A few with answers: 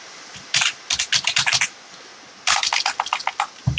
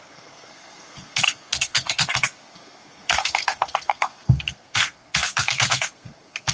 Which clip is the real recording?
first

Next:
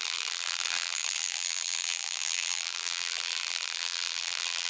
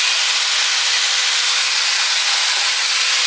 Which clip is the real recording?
second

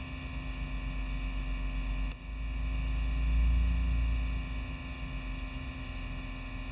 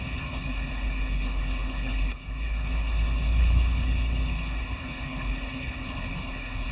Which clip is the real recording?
first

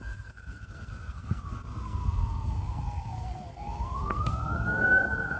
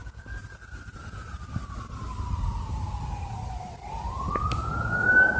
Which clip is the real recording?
second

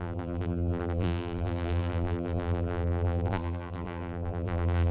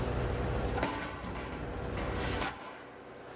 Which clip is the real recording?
second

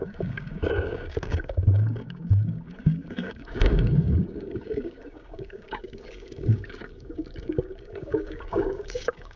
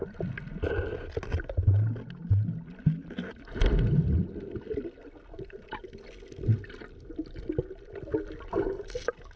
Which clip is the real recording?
second